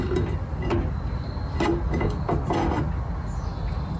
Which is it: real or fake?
real